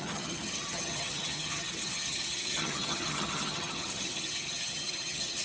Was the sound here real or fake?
fake